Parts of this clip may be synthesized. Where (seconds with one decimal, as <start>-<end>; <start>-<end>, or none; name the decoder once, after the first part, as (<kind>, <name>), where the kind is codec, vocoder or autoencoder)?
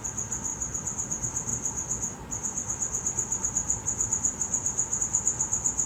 0.5-1.1 (vocoder, BigVGAN v2)